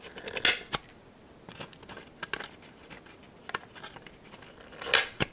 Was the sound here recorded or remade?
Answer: recorded